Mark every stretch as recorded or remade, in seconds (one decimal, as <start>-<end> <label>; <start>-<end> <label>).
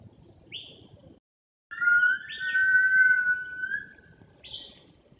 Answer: 0.0-5.2 recorded